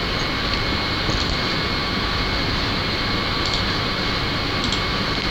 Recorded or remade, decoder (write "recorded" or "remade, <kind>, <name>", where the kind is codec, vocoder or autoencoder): recorded